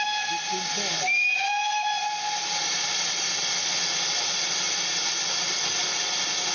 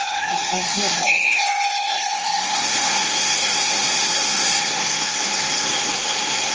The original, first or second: first